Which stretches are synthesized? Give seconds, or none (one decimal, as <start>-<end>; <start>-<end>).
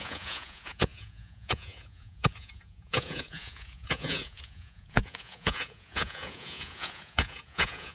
0.0-7.9